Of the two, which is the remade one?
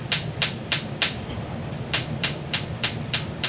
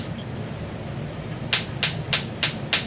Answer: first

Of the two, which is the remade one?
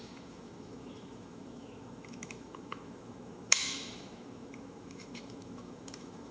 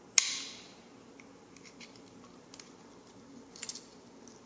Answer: first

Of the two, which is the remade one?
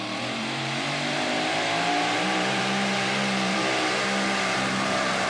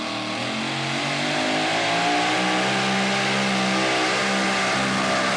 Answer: first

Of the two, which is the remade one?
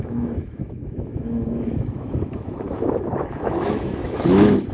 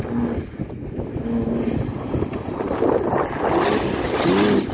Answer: first